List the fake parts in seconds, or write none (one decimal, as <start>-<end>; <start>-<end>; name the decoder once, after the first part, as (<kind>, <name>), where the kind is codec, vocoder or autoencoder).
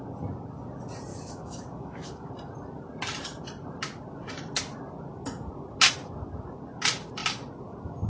1.1-2.3 (autoencoder, DAC-VAE)